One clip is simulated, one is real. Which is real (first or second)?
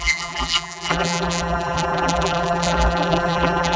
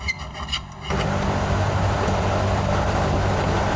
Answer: second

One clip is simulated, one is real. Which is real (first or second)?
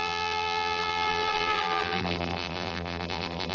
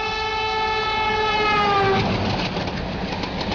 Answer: second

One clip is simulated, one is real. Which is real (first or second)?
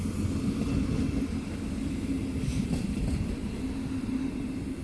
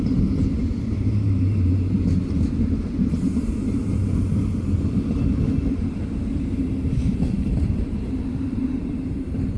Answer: first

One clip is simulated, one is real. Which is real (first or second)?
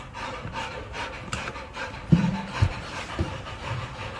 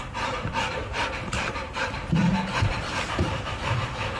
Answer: first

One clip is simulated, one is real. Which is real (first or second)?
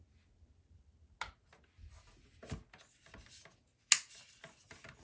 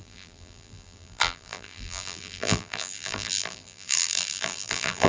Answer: first